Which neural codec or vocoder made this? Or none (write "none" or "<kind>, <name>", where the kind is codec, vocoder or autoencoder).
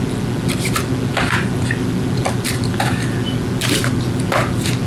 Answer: none